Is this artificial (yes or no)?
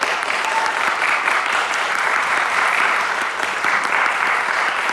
yes